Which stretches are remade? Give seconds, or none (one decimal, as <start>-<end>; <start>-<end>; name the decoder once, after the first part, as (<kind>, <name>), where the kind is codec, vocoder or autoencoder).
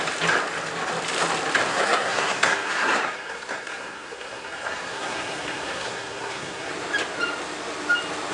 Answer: 1.7-6.7 (codec, SNAC)